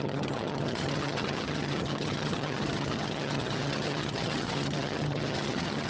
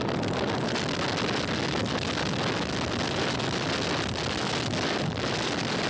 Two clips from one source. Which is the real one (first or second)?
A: second